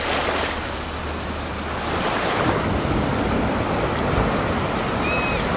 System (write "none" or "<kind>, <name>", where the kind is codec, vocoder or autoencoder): none